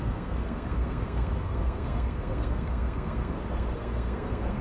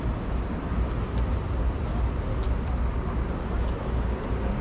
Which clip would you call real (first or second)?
second